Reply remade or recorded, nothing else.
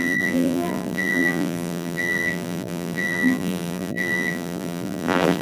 remade